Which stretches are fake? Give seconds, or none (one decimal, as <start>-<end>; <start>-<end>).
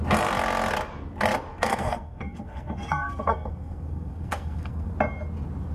1.5-4.9